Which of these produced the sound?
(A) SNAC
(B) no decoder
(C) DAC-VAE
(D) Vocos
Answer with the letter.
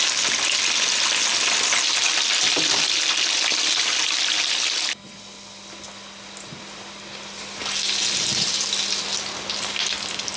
B